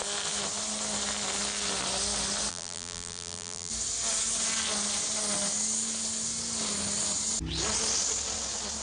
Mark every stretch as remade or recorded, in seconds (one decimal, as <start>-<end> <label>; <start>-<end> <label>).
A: 0.0-2.5 recorded; 2.5-3.7 remade; 3.7-8.8 recorded